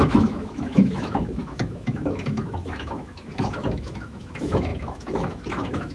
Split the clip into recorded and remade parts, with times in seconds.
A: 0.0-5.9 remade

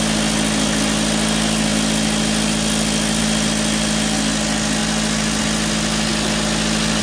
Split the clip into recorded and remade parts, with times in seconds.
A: 0.0-7.0 recorded

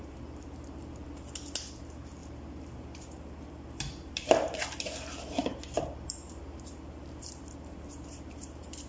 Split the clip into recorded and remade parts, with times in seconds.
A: 0.0-1.0 remade; 1.0-1.7 recorded; 1.7-8.9 remade

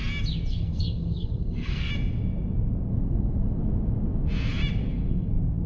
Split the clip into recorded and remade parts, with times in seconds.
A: 0.0-0.5 recorded; 0.5-1.9 remade; 1.9-2.9 recorded; 2.9-3.6 remade; 3.6-4.8 recorded; 4.8-5.3 remade; 5.3-5.7 recorded

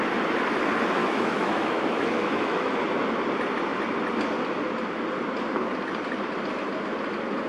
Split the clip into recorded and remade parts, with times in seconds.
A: 0.0-1.0 recorded; 1.0-2.7 remade; 2.7-7.5 recorded

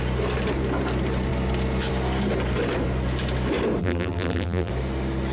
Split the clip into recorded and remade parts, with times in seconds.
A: 0.0-3.8 recorded; 3.8-4.7 remade; 4.7-5.3 recorded